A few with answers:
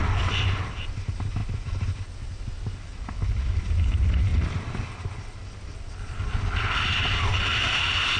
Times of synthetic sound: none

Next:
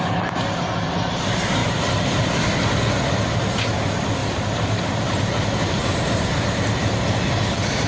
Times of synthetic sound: 4.2-6.6 (vocoder, BigVGAN v2)

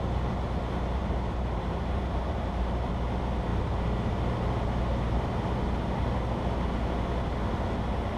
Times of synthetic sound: 1.0-2.9 (vocoder, BigVGAN v2)